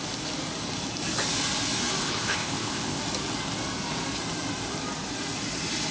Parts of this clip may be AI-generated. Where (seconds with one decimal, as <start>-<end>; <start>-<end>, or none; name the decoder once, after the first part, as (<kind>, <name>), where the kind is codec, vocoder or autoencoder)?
2.0-3.0 (codec, ZipCodec)